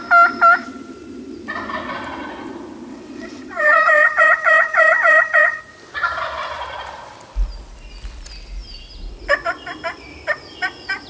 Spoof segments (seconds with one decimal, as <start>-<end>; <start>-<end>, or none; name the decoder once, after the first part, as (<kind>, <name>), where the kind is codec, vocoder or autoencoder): 2.9-5.6 (vocoder, WaveNeXt)